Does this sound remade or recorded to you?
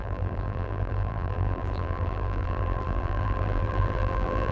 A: remade